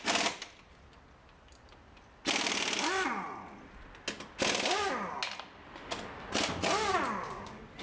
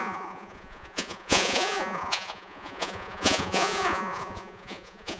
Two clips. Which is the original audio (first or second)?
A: first